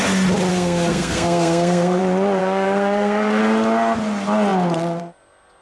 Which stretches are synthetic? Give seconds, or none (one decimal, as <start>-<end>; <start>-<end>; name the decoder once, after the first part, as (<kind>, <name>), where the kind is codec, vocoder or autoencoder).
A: 0.5-2.0 (codec, SNAC); 2.4-3.4